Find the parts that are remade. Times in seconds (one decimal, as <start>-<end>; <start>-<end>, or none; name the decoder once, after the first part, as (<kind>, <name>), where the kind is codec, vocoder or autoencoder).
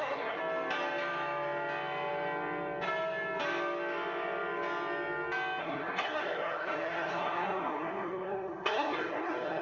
0.0-0.4 (codec, SNAC); 5.6-9.6